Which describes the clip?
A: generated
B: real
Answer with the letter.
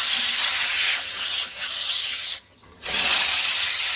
A